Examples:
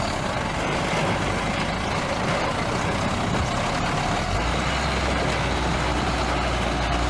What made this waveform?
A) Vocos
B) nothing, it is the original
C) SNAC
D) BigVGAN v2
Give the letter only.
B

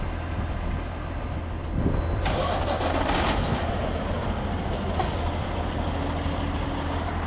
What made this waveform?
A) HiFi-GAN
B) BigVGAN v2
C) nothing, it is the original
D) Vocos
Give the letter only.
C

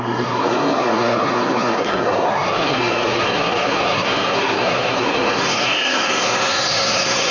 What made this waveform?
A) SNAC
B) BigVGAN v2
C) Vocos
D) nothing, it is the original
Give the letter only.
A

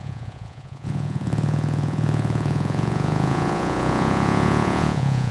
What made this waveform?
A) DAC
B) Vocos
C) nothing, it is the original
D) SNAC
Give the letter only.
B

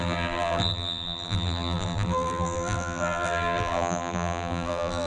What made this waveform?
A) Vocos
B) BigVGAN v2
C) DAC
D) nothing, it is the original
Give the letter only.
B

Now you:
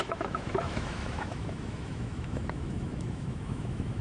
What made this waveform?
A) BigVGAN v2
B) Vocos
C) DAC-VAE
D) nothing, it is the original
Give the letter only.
C